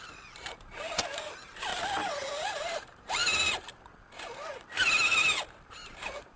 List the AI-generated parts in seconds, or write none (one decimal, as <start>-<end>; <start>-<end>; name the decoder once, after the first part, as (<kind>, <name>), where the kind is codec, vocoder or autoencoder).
0.0-1.7 (vocoder, BigVGAN v2); 2.6-3.2; 5.3-6.4